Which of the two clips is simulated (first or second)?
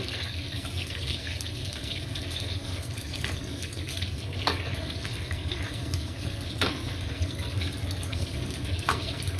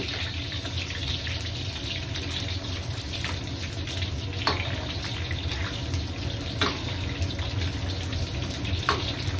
first